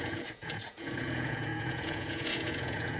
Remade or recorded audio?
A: remade